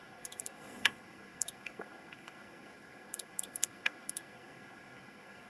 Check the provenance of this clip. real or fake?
fake